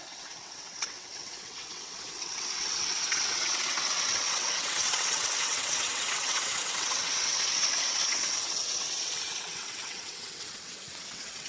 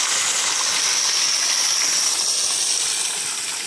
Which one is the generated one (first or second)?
first